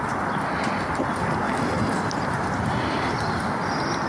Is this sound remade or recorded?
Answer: recorded